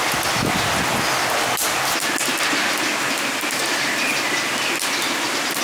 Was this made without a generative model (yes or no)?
yes